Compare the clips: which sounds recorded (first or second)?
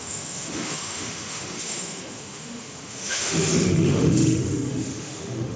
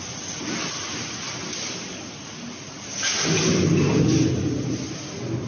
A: second